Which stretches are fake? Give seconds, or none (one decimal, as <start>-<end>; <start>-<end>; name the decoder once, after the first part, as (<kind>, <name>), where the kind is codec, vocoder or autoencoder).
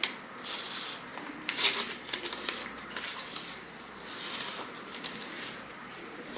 none